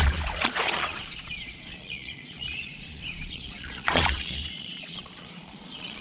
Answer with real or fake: fake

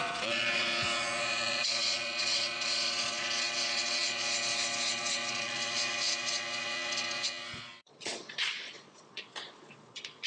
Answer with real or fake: fake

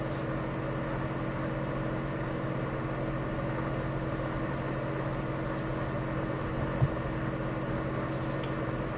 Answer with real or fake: real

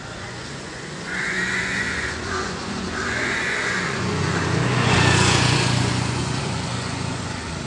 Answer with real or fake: fake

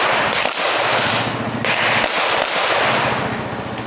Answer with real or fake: real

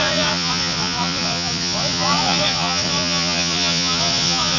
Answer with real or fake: fake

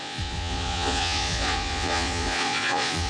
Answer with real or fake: fake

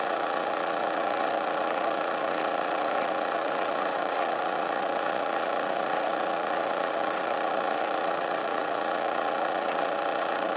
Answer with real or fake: fake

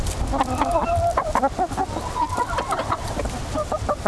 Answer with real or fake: real